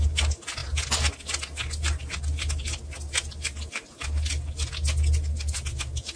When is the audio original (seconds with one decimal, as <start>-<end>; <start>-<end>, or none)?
0.0-6.2